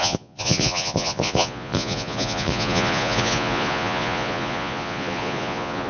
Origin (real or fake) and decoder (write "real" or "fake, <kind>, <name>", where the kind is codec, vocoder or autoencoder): fake, vocoder, Vocos